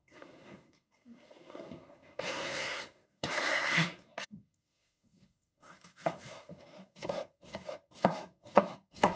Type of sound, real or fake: fake